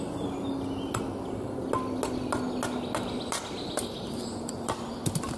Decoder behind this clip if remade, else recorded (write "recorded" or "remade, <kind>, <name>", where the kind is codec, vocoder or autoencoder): recorded